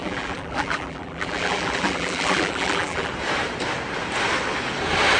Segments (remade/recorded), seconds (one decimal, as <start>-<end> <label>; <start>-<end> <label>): 0.0-3.1 remade; 3.1-5.2 recorded